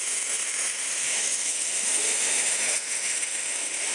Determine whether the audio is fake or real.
fake